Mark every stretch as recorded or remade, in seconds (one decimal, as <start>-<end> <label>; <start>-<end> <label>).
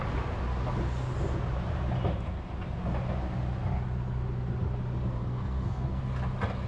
0.0-5.2 recorded; 5.2-6.0 remade; 6.0-6.7 recorded